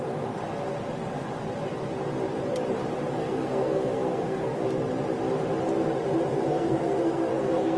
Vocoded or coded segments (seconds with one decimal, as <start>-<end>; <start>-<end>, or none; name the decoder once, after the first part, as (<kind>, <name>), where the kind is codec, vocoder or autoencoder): 3.2-4.6 (codec, SNAC); 6.3-7.8